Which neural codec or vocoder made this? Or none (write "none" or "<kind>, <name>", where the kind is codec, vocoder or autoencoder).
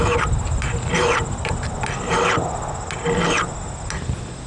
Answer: none